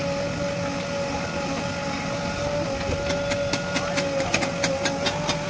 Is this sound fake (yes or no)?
no